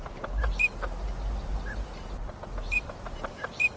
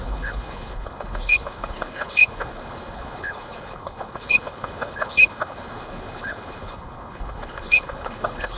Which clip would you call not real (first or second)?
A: second